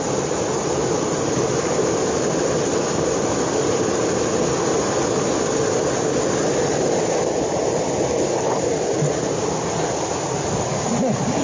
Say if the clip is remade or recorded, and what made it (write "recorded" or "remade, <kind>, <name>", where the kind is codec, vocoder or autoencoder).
recorded